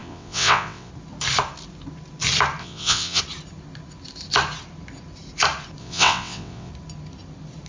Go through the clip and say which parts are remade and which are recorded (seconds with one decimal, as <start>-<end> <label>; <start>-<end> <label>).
0.0-0.9 remade; 0.9-2.6 recorded; 2.6-3.2 remade; 3.2-5.8 recorded; 5.8-6.7 remade; 6.7-7.7 recorded